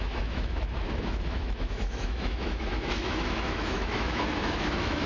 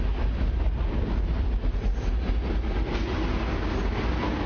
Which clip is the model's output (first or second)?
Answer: first